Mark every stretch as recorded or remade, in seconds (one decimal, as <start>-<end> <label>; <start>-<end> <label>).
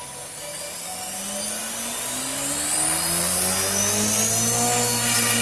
0.0-5.4 recorded